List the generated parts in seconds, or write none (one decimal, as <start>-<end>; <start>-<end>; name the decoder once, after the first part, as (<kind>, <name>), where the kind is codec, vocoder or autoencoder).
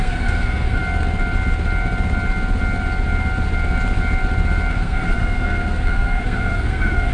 0.0-0.8 (codec, SNAC); 4.7-7.1